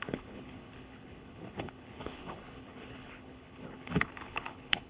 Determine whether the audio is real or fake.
fake